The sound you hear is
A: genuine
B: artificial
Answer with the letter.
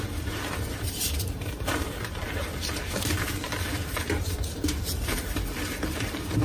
B